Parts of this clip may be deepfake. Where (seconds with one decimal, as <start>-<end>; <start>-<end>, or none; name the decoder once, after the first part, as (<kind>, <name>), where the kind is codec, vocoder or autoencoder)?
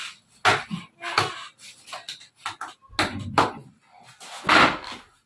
none